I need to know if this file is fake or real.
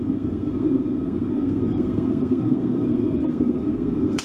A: fake